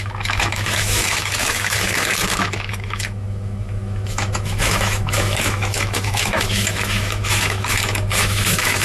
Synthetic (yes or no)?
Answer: yes